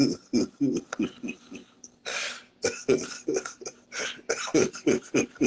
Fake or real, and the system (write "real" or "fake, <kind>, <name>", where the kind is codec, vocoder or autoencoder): real